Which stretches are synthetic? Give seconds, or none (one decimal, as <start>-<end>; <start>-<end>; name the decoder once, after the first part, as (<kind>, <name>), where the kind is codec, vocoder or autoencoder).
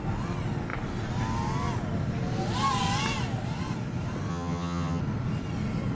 4.3-5.0 (vocoder, HiFi-GAN)